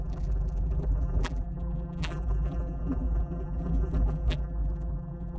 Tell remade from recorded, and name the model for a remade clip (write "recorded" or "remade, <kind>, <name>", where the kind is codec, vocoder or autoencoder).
remade, vocoder, BigVGAN v2